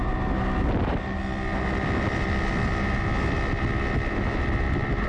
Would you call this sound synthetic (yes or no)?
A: no